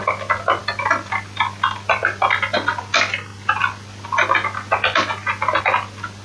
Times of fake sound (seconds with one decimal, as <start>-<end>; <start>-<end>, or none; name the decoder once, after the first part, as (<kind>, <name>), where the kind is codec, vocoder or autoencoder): 2.0-2.8 (vocoder, BigVGAN v2)